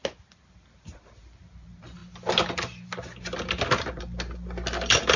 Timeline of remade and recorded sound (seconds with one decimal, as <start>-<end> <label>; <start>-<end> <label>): 0.0-5.2 recorded